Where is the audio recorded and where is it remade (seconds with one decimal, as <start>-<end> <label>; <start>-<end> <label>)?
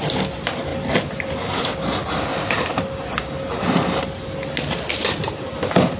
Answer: 0.0-6.0 recorded